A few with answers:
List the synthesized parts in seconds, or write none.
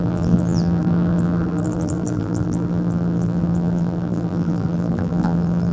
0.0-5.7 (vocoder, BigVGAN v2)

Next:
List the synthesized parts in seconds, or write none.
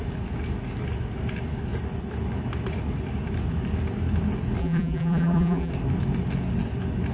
4.6-5.7 (vocoder, BigVGAN v2)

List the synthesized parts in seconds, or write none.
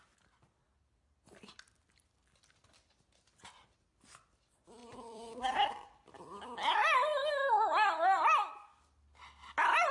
4.8-6.1 (vocoder, BigVGAN v2)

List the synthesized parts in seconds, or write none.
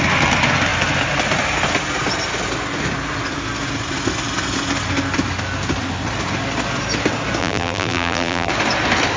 7.4-8.5 (vocoder, BigVGAN v2)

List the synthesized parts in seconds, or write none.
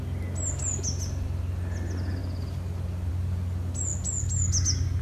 none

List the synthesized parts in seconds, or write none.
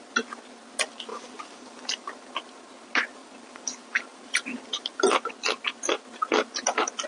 1.1-2.3 (vocoder, BigVGAN v2); 3.2-5.3